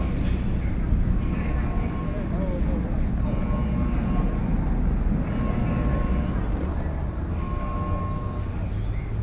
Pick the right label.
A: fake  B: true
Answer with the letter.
B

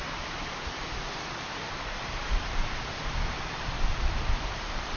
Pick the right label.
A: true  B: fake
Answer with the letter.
B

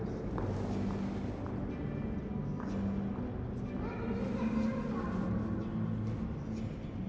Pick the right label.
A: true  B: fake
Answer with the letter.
A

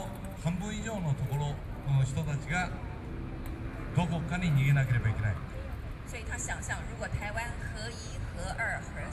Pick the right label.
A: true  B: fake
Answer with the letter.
A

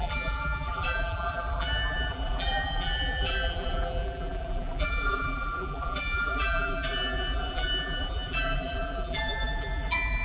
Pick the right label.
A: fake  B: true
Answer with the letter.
A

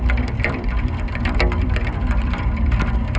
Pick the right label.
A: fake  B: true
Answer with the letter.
A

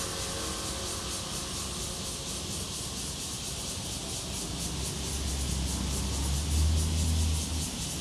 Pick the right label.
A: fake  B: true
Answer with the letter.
B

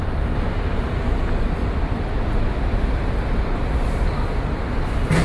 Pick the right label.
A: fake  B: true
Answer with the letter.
B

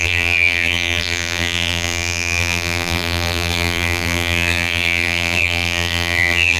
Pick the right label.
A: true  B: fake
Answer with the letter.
B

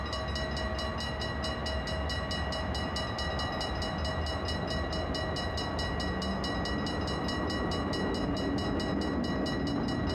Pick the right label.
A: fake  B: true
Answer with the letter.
B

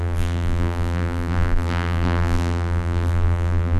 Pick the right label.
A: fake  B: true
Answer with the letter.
A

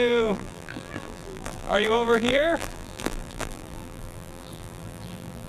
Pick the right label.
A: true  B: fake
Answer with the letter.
B